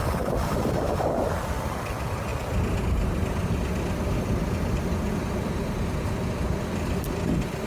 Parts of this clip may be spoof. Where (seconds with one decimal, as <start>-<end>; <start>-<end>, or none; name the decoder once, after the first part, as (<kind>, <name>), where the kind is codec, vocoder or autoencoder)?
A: 0.0-0.6 (vocoder, BigVGAN v2)